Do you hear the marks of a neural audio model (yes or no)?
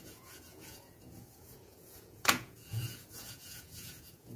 yes